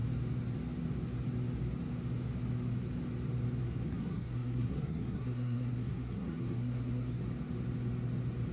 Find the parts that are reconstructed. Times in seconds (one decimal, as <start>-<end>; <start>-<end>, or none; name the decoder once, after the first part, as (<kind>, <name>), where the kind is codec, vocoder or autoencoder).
3.6-7.2 (codec, SNAC)